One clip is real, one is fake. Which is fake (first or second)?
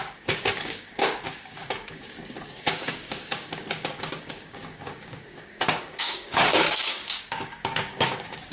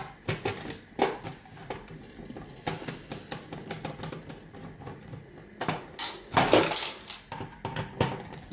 first